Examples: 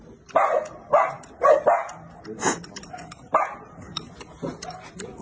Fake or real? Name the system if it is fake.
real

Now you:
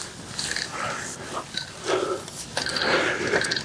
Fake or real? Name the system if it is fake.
real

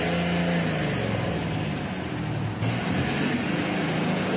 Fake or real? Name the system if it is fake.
real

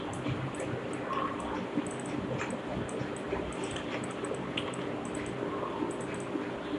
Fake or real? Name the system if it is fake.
real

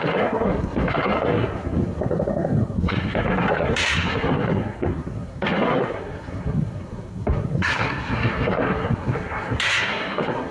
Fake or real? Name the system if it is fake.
fake, codec, SNAC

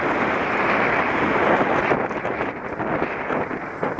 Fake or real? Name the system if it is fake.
real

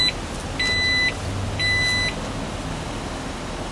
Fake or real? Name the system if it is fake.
real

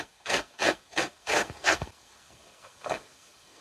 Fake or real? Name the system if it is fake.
fake, codec, SNAC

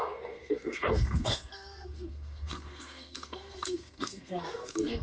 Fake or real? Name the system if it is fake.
fake, codec, SNAC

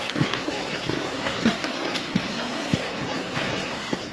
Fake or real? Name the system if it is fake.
fake, codec, SNAC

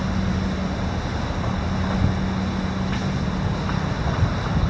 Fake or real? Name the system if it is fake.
real